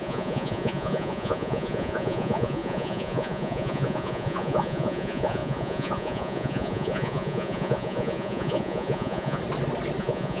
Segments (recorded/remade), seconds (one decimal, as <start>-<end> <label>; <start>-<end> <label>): 0.0-9.4 remade; 9.4-10.0 recorded; 10.0-10.4 remade